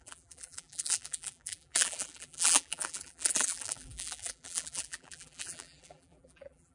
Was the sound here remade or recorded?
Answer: remade